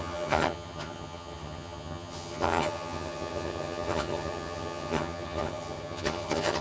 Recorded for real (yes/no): no